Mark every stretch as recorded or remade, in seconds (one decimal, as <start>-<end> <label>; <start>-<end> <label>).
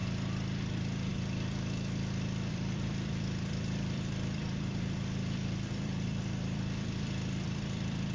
0.0-0.7 recorded; 0.7-1.1 remade; 1.1-2.5 recorded; 2.5-8.1 remade